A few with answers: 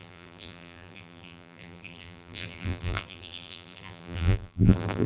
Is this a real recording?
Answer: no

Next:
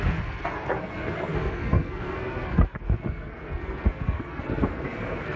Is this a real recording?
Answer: no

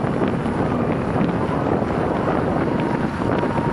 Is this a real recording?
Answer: yes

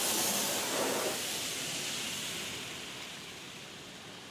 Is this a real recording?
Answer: yes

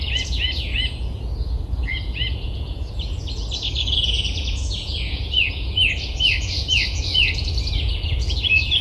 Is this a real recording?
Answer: no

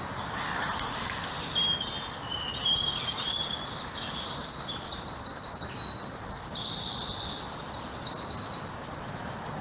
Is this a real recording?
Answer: yes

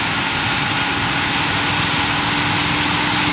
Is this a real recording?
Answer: yes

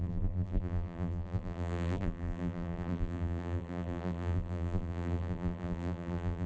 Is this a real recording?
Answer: no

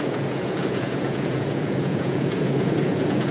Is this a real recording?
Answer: no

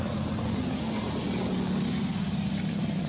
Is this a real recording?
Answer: yes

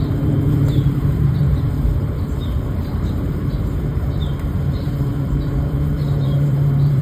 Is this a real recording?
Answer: no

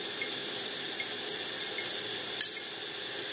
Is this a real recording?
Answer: yes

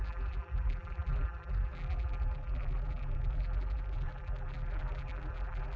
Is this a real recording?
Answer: no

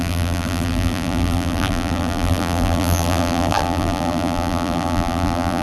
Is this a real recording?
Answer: no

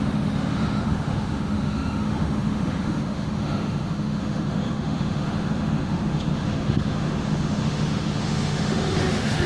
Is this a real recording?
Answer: no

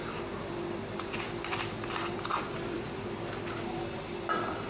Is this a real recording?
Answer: no